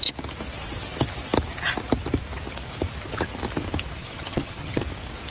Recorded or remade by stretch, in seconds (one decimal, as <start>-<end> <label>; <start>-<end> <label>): 0.0-4.0 recorded; 4.0-4.8 remade; 4.8-5.3 recorded